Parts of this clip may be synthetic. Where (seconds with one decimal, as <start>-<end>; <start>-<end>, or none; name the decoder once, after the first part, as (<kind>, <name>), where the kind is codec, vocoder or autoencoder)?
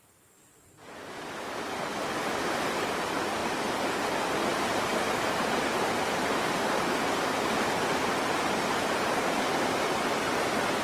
none